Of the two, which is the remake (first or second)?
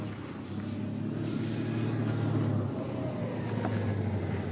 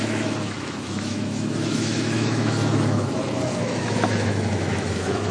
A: second